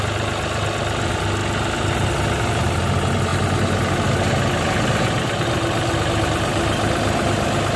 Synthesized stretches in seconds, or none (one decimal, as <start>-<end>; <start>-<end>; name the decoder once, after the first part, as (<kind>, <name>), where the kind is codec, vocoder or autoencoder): none

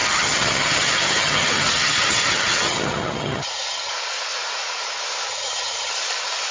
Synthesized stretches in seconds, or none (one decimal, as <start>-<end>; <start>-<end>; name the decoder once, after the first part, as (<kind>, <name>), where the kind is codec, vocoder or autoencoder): 0.0-3.9 (vocoder, HiFi-GAN); 5.3-5.9